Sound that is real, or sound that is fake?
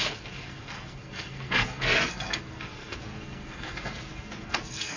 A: fake